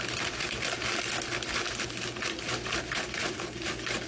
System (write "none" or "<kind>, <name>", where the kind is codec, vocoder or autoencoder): none